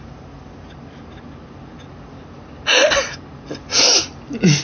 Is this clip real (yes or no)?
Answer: yes